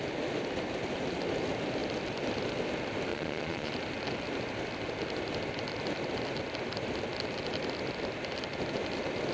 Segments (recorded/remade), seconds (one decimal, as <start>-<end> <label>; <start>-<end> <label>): 0.0-3.1 recorded; 3.1-3.7 remade; 3.7-9.3 recorded